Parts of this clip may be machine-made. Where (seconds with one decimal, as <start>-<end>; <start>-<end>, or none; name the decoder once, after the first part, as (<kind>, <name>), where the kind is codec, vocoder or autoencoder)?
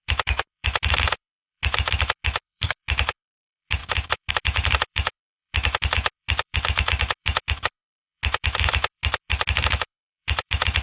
0.0-10.8 (autoencoder, DAC-VAE)